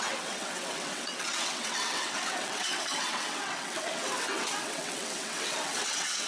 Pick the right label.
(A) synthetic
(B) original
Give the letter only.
A